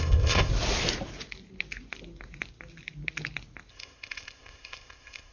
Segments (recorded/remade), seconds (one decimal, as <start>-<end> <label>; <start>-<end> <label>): 0.0-0.5 remade; 0.5-3.7 recorded; 3.7-5.3 remade

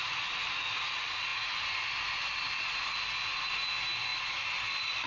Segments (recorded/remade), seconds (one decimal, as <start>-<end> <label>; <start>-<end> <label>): 0.0-5.1 recorded

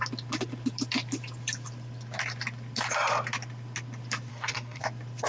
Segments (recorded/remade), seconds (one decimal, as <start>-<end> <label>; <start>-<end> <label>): 0.0-4.3 recorded; 4.3-4.8 remade; 4.8-5.3 recorded

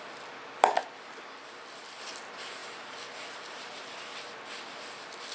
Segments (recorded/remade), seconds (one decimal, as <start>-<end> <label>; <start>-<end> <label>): 0.0-5.3 recorded